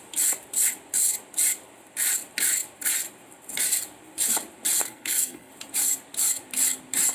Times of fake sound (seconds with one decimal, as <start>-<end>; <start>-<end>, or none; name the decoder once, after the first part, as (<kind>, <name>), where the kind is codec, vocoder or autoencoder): 4.8-5.5 (codec, SNAC)